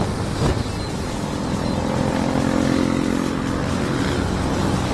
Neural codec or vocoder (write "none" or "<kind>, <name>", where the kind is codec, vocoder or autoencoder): none